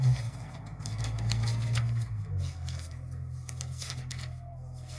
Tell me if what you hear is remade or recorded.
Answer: remade